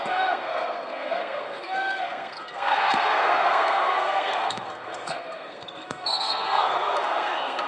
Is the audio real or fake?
fake